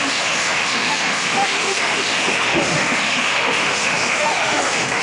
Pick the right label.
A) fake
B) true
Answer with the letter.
A